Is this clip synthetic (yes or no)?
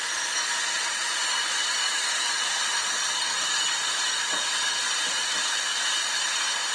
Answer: no